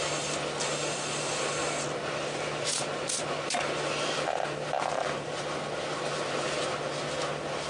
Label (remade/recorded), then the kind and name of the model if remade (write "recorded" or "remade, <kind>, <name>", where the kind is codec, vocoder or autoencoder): recorded